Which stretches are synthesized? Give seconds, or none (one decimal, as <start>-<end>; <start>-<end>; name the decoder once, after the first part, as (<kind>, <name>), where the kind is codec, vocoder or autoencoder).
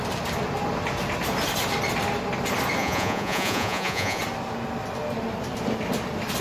2.8-4.2 (vocoder, Vocos)